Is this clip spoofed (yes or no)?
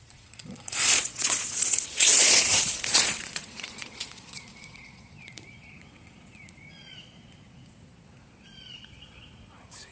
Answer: yes